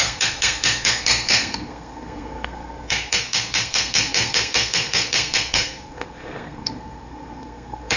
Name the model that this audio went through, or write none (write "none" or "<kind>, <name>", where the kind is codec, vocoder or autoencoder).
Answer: codec, SNAC